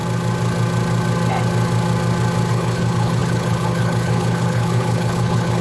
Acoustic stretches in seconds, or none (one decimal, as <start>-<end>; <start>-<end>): 0.0-2.5